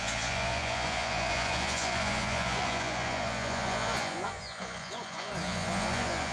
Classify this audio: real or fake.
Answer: fake